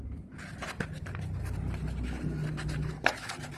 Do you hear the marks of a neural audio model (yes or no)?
no